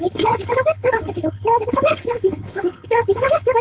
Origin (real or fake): fake